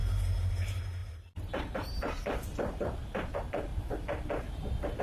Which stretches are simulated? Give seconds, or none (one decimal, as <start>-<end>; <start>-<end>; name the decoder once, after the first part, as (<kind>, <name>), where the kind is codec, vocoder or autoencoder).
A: 0.5-3.7 (vocoder, BigVGAN v2)